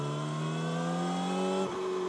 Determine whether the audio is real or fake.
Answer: real